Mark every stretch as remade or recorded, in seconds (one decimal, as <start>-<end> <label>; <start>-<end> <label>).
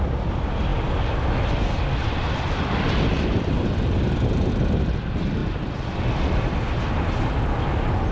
0.0-8.1 recorded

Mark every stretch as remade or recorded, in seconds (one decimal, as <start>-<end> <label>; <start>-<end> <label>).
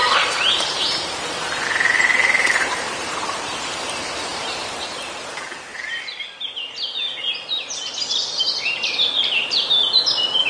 0.0-3.7 remade; 3.7-4.3 recorded; 4.3-5.3 remade; 5.3-5.7 recorded; 5.7-6.2 remade; 6.2-10.5 recorded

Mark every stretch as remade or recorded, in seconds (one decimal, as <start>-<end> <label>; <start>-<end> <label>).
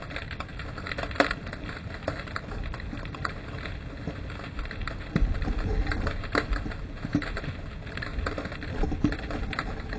0.0-0.5 recorded; 0.5-2.3 remade; 2.3-8.1 recorded; 8.1-9.2 remade; 9.2-10.0 recorded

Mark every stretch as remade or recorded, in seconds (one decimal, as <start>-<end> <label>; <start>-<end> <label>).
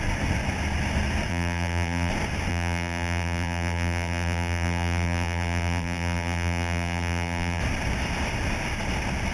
0.0-1.3 recorded; 1.3-2.1 remade; 2.1-2.5 recorded; 2.5-7.6 remade; 7.6-9.3 recorded